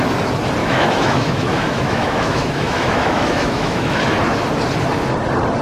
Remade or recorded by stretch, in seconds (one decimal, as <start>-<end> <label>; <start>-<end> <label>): 0.0-0.6 recorded; 0.6-4.0 remade; 4.0-5.6 recorded